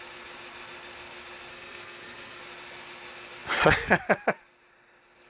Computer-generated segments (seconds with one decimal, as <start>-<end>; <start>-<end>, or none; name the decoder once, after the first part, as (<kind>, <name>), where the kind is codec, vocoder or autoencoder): 1.5-2.4 (codec, SNAC)